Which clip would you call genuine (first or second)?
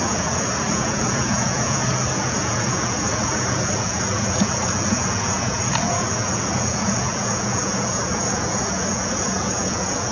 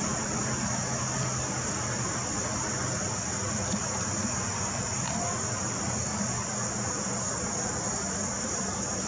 second